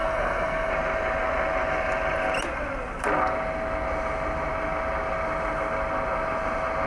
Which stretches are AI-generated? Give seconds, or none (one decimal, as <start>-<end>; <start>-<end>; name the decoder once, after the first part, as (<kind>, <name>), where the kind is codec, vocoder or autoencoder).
0.0-0.7 (codec, SNAC)